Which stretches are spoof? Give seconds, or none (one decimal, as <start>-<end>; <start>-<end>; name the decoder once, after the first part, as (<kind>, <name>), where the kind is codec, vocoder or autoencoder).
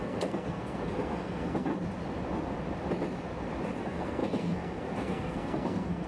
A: 0.0-1.7 (codec, SNAC); 3.8-6.1